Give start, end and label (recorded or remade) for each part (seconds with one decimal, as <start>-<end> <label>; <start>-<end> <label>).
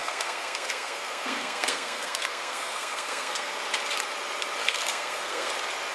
0.0-3.5 remade; 3.5-4.6 recorded; 4.6-5.5 remade; 5.5-5.9 recorded